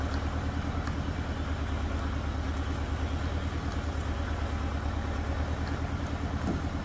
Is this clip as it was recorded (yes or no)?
yes